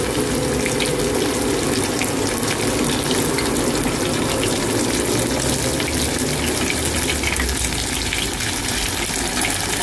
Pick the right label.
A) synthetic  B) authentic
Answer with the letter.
B